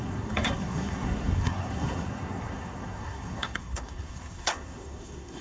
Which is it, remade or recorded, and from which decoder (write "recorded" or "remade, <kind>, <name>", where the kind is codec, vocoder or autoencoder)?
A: remade, codec, SNAC